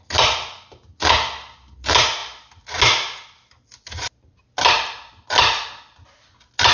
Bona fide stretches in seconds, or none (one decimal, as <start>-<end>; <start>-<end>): 0.0-6.7